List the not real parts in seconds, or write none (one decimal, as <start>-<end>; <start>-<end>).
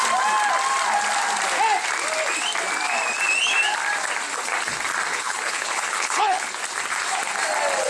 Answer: 5.1-6.6